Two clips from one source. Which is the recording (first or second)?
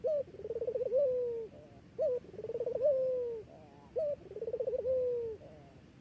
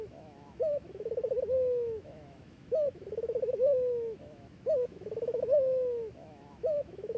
first